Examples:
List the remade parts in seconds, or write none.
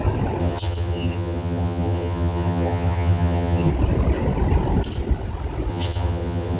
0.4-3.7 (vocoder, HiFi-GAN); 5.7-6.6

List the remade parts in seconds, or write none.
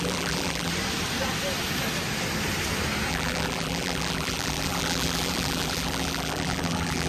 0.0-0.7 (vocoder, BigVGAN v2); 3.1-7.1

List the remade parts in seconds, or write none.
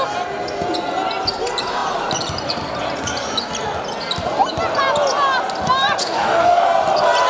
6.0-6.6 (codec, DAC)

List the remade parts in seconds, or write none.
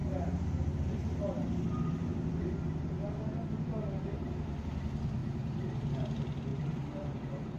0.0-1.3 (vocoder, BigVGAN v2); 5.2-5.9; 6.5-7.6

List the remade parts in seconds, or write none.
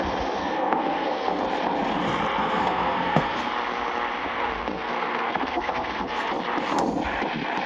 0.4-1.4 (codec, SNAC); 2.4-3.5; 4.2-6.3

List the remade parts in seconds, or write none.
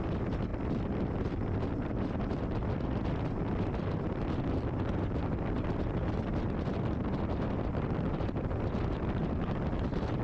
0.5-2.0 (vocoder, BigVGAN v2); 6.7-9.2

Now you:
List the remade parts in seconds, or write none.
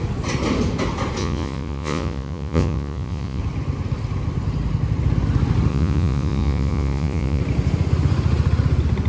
1.2-3.4 (vocoder, Vocos); 5.7-7.4